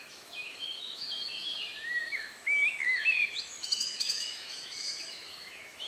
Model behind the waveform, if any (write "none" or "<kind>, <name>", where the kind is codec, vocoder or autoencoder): autoencoder, DAC-VAE